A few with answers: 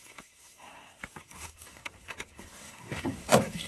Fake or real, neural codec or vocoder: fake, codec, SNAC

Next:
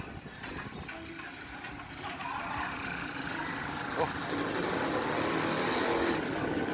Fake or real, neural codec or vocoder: real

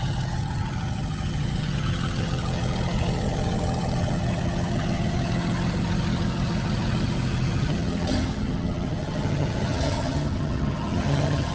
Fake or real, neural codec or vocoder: fake, vocoder, HiFi-GAN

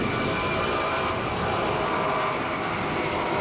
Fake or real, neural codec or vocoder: real